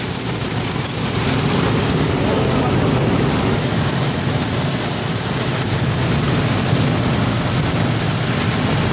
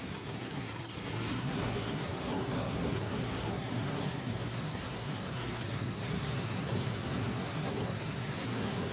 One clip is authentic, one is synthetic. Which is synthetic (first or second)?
second